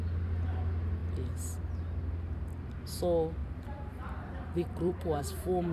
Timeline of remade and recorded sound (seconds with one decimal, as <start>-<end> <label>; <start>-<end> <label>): 0.0-3.4 recorded; 3.4-5.2 remade; 5.2-5.7 recorded

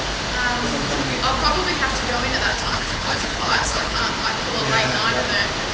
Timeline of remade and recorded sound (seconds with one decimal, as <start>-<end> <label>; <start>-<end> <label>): 0.0-2.5 recorded; 2.5-4.0 remade; 4.0-5.7 recorded

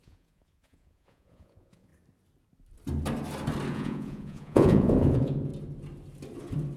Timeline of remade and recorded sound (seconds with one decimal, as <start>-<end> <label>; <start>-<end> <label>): 0.0-1.9 remade; 1.9-3.7 recorded; 3.7-5.5 remade; 5.5-6.8 recorded